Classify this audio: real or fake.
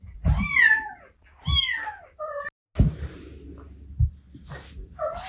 real